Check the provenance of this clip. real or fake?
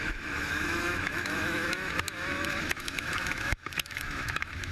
fake